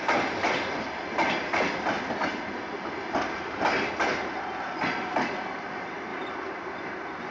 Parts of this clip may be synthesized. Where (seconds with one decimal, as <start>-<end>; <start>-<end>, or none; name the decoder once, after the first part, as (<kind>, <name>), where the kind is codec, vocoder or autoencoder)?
none